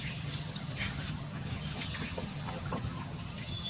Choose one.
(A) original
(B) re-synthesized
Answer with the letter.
B